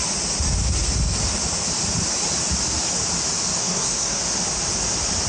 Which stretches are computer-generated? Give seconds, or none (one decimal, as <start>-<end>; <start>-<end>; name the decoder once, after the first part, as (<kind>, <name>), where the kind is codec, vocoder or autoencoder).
3.6-4.2 (codec, SNAC)